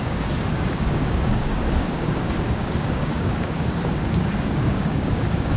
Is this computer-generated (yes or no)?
yes